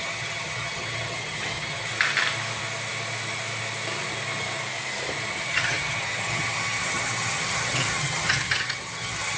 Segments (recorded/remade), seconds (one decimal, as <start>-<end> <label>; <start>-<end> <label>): 0.0-1.9 remade; 1.9-5.3 recorded; 5.3-9.4 remade

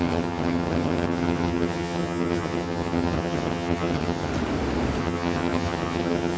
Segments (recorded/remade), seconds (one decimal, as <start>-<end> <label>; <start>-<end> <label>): 0.0-4.3 remade; 4.3-5.0 recorded; 5.0-6.4 remade